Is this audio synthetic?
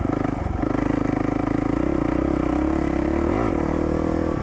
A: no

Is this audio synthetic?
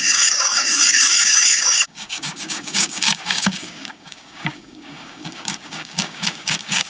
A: yes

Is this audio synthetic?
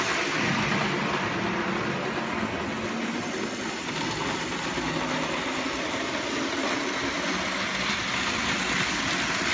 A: no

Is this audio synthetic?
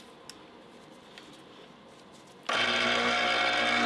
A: no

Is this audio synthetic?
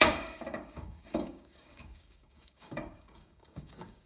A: yes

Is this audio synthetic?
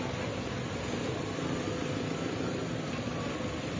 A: no